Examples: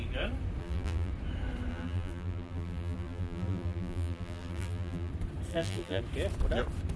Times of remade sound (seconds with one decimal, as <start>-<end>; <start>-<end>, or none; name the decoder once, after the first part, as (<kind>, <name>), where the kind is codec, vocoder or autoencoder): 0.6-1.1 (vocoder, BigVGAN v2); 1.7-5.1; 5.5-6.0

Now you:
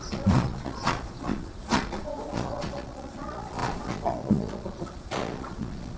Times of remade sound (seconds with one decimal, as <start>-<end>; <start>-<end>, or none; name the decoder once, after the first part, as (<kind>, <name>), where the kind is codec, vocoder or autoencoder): 0.0-6.0 (vocoder, Vocos)

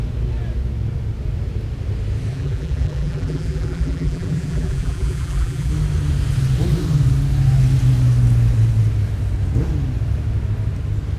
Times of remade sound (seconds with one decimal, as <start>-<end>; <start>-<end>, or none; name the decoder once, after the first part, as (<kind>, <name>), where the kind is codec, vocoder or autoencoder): 2.3-5.7 (vocoder, BigVGAN v2)

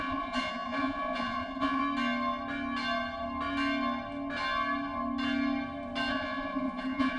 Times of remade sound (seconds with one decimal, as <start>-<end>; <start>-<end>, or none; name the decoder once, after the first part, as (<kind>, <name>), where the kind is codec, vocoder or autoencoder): 0.0-1.8 (vocoder, Vocos); 6.1-7.2